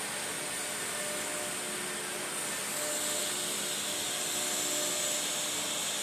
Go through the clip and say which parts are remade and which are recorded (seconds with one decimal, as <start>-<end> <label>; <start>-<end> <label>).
0.0-6.0 recorded